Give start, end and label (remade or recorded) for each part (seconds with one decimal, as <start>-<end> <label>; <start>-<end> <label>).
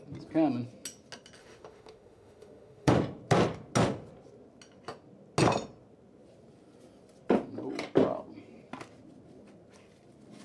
0.0-1.4 recorded; 1.4-2.9 remade; 2.9-10.4 recorded